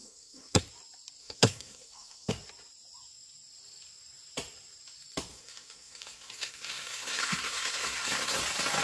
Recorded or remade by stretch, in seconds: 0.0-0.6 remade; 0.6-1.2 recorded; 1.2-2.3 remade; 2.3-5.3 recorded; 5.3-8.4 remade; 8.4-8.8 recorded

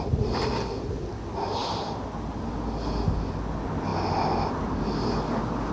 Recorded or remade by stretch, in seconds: 0.0-5.7 recorded